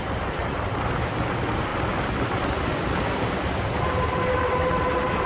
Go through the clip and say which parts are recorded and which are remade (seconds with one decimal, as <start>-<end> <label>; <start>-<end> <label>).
0.0-5.3 recorded

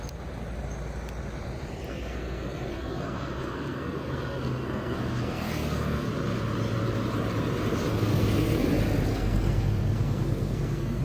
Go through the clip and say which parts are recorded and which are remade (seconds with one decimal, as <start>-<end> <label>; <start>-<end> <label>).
0.0-1.9 recorded; 1.9-6.1 remade; 6.1-7.9 recorded; 7.9-8.7 remade; 8.7-9.1 recorded; 9.1-11.0 remade

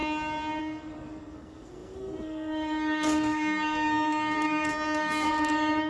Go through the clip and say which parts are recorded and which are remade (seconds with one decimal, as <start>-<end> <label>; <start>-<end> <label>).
0.0-0.6 recorded; 0.6-5.9 remade

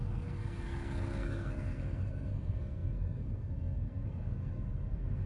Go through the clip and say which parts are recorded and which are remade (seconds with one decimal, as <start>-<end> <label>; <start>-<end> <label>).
0.0-5.3 remade

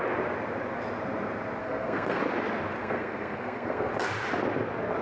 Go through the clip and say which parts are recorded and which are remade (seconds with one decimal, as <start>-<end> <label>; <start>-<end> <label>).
0.0-1.6 recorded; 1.6-2.2 remade; 2.2-2.8 recorded; 2.8-3.9 remade; 3.9-5.0 recorded

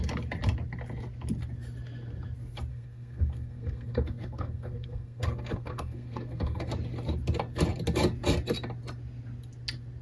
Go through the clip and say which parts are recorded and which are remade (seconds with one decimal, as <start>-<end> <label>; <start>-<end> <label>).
0.0-2.7 recorded; 2.7-6.7 remade; 6.7-10.0 recorded

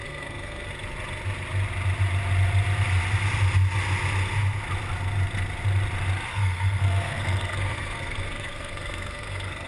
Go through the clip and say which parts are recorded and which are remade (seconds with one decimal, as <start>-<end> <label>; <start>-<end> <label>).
0.0-0.7 remade; 0.7-6.3 recorded; 6.3-9.7 remade

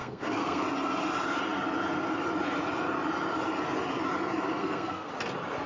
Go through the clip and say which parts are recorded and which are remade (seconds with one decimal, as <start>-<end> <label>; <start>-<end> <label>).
0.0-0.6 remade; 0.6-4.6 recorded; 4.6-5.1 remade; 5.1-5.7 recorded